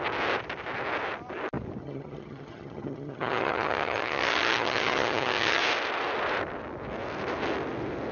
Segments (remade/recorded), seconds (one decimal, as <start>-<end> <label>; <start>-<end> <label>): 0.0-1.8 recorded; 1.8-5.6 remade; 5.6-8.1 recorded